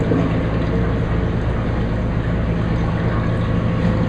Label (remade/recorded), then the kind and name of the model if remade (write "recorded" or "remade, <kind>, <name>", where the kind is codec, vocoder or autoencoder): recorded